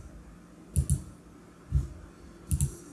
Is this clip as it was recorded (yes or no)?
yes